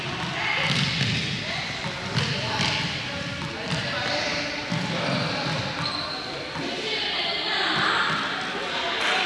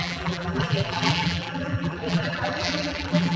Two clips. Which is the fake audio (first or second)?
second